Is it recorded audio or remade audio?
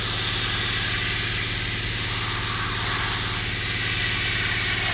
recorded